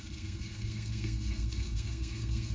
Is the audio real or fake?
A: fake